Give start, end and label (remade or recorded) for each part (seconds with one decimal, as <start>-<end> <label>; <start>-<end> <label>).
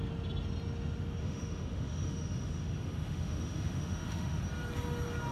0.0-1.2 recorded; 1.2-4.4 remade; 4.4-5.3 recorded